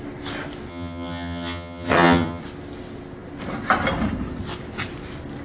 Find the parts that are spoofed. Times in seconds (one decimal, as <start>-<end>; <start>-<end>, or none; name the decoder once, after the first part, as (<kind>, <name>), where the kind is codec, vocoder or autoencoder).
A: 0.7-2.4 (vocoder, HiFi-GAN)